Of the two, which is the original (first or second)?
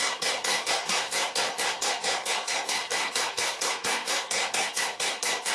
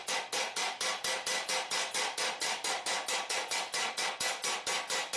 second